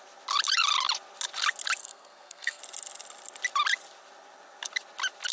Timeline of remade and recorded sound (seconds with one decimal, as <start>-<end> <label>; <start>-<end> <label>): 0.0-1.8 recorded; 1.8-2.6 remade; 2.6-5.3 recorded